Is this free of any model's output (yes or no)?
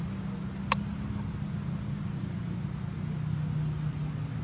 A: yes